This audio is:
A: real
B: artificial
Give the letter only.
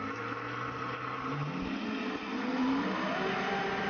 A